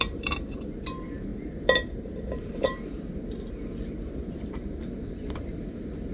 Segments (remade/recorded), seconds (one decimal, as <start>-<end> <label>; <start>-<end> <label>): 0.0-1.3 remade; 1.3-2.4 recorded; 2.4-6.1 remade